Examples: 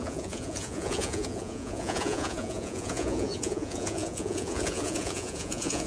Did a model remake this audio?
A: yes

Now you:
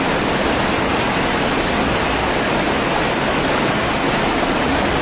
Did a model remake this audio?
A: no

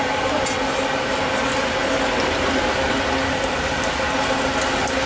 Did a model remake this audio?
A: no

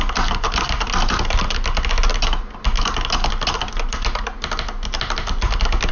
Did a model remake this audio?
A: no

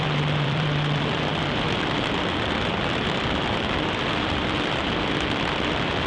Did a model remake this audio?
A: yes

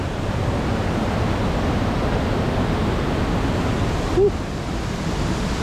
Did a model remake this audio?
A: no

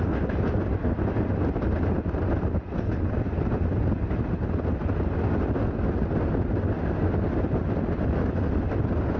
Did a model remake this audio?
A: no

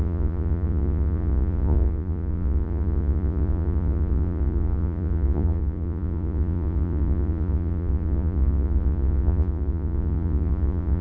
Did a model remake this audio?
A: yes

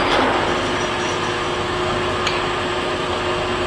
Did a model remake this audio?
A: no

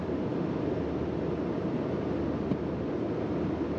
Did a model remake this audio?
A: no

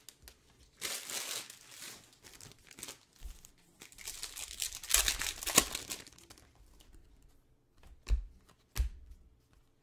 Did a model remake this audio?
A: no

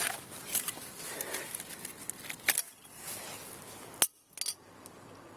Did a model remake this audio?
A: no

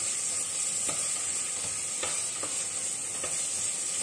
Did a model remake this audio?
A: no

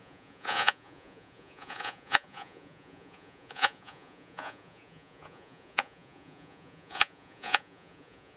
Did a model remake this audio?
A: yes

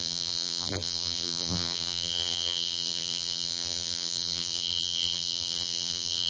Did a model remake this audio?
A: yes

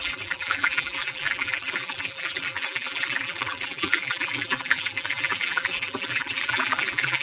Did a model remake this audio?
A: yes